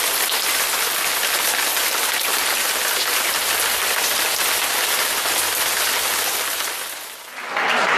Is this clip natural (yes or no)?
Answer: yes